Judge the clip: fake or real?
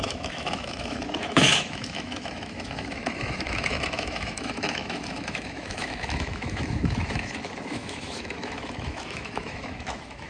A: fake